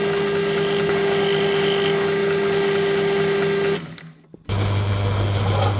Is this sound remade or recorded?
recorded